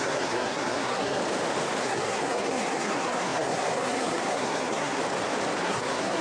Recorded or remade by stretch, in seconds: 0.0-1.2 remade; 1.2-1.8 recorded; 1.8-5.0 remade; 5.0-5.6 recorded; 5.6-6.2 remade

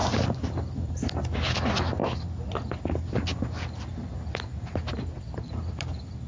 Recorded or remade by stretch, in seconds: 0.0-0.9 remade; 0.9-6.3 recorded

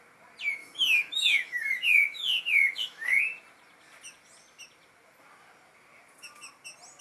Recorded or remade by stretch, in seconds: 0.0-0.6 recorded; 0.6-3.2 remade; 3.2-7.0 recorded

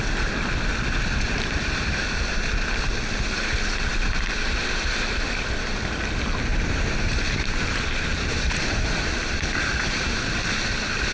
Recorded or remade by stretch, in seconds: 0.0-6.5 recorded; 6.5-10.4 remade; 10.4-11.1 recorded